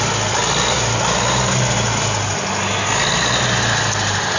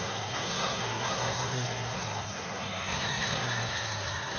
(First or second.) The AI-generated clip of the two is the second